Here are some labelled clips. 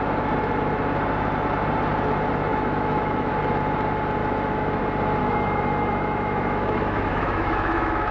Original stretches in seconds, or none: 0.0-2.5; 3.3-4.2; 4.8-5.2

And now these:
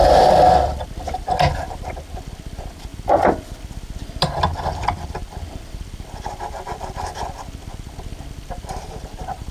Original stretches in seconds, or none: 0.0-9.5